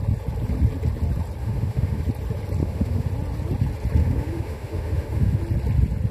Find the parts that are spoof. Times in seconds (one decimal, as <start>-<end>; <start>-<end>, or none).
1.4-2.0; 2.6-3.1; 4.0-5.4